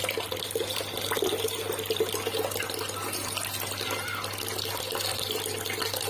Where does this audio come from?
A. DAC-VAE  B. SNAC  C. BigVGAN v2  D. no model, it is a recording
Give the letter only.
D